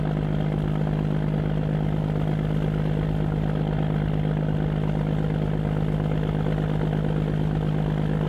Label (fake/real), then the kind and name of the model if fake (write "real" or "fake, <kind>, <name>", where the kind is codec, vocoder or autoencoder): fake, vocoder, BigVGAN v2